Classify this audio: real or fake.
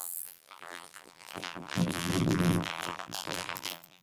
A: fake